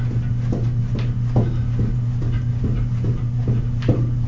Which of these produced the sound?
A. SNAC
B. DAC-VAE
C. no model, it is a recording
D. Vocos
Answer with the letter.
C